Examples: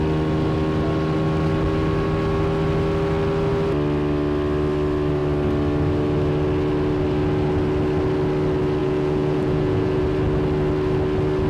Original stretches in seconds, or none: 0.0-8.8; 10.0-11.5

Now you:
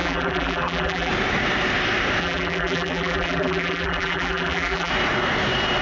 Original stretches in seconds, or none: 1.1-2.2; 4.9-5.8